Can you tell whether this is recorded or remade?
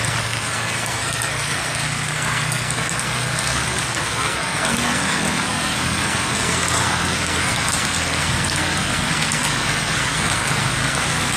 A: remade